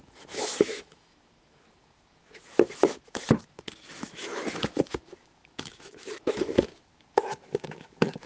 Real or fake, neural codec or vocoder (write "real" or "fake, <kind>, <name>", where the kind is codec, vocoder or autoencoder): fake, autoencoder, DAC-VAE